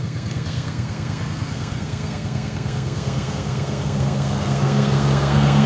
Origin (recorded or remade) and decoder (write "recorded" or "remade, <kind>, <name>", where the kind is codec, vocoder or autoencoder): remade, codec, SNAC